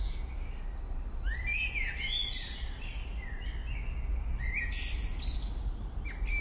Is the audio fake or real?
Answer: real